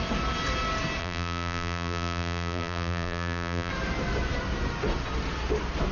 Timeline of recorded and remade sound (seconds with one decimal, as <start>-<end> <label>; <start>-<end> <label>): 0.0-1.0 recorded; 1.0-3.7 remade; 3.7-5.9 recorded